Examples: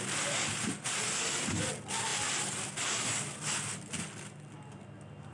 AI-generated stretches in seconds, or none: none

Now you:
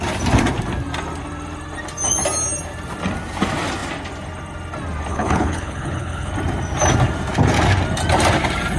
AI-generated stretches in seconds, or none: 5.1-6.3 (codec, HILCodec)

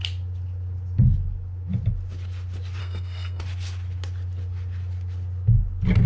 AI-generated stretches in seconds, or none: 2.8-3.4 (codec, SNAC)